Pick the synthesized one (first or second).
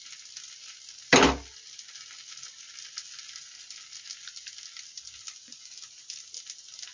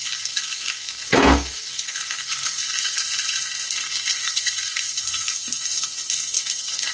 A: second